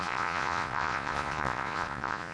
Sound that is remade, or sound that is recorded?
remade